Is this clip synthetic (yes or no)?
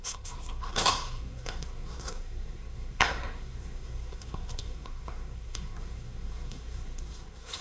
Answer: yes